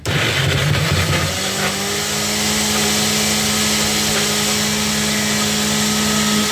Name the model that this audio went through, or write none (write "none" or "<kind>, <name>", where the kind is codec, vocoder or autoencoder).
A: none